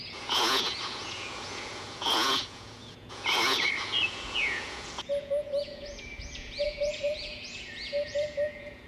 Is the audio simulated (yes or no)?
yes